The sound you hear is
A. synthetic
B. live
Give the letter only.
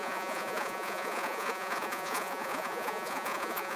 A